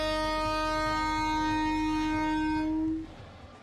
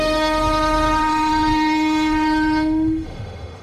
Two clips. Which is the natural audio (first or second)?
first